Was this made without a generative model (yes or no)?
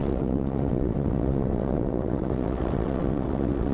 no